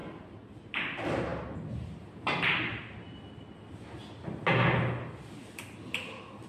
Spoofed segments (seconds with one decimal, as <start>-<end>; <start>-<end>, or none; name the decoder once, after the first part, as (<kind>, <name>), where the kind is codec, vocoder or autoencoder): none